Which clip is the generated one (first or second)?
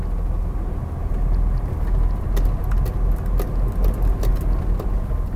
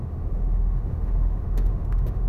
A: second